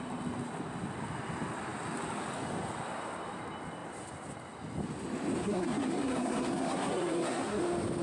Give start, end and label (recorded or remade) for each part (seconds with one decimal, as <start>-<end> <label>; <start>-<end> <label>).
0.0-5.4 recorded; 5.4-7.6 remade; 7.6-8.0 recorded